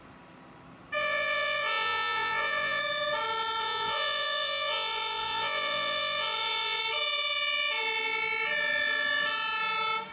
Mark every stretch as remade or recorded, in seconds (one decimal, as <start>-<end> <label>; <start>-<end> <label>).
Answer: 0.0-1.0 recorded; 1.0-2.8 remade; 2.8-3.6 recorded; 3.6-6.8 remade; 6.8-10.1 recorded